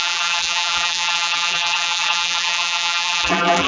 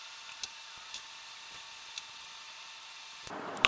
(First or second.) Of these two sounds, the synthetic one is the first